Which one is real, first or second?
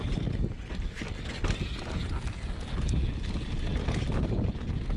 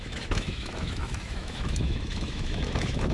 first